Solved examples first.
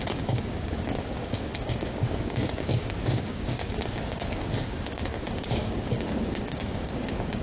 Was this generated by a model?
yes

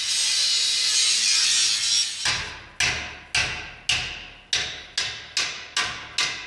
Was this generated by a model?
no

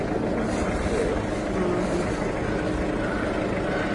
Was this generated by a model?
no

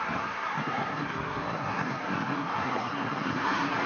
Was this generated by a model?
yes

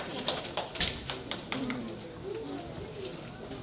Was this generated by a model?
no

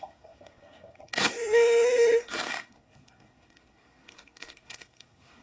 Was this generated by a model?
yes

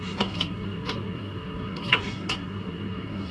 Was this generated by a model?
yes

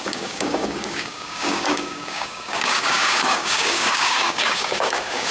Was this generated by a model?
yes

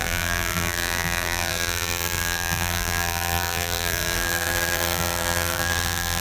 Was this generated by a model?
yes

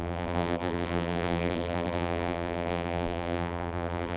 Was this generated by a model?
yes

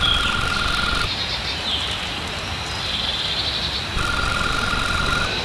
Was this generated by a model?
no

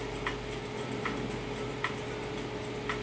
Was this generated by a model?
no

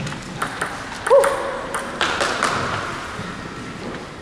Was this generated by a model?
no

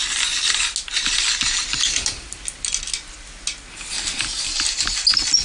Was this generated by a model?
no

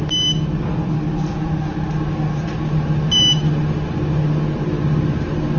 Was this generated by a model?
no